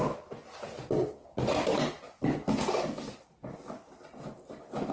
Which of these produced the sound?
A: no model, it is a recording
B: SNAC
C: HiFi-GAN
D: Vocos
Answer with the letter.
A